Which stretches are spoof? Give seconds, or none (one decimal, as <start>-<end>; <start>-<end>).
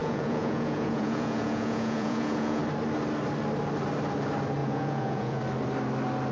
0.0-2.6; 4.6-5.4